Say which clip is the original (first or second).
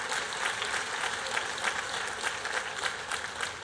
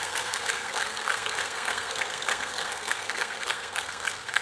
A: first